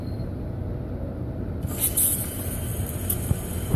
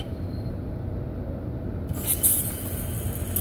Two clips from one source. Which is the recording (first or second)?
second